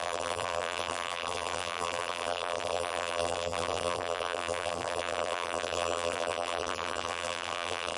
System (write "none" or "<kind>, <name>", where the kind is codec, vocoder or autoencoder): vocoder, BigVGAN v2